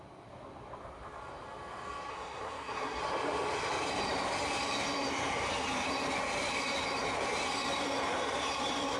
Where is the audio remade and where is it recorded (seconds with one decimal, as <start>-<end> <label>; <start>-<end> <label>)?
0.0-2.1 recorded; 2.1-3.0 remade; 3.0-9.0 recorded